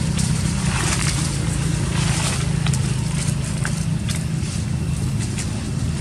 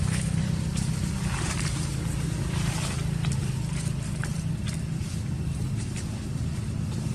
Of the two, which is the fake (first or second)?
second